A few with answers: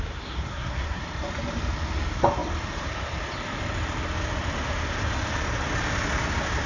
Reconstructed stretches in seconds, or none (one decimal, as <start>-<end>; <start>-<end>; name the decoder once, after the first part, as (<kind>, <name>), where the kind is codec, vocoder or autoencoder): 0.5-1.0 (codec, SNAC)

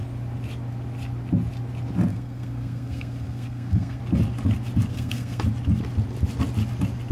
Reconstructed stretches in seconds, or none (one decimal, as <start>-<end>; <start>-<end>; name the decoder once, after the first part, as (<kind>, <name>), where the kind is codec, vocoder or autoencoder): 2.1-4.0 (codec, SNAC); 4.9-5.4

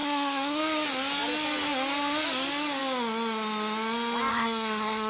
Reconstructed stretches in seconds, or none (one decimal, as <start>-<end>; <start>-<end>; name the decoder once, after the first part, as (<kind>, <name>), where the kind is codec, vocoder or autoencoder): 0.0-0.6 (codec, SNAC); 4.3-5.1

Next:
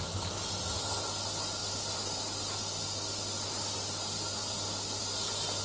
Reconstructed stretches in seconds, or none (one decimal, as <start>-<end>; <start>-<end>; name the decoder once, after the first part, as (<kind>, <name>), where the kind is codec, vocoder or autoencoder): none